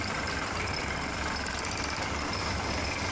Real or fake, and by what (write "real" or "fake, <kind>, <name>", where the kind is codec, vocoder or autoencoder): real